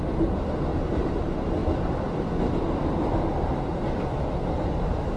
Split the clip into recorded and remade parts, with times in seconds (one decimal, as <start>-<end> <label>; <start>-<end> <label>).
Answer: 0.0-0.7 recorded; 0.7-1.2 remade; 1.2-5.2 recorded